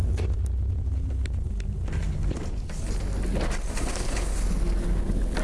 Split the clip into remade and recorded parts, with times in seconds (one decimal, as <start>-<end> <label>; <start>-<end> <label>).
0.0-5.4 recorded